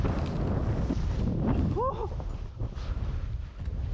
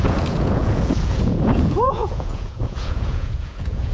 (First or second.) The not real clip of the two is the second